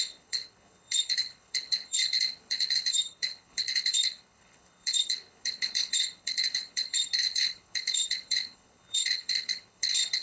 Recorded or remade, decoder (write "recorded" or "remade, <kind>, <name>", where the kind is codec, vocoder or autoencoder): remade, codec, HILCodec